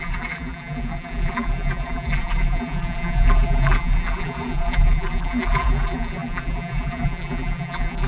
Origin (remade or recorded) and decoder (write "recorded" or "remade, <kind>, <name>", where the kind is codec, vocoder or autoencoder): remade, vocoder, BigVGAN v2